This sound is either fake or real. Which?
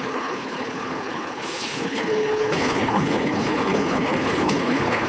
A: fake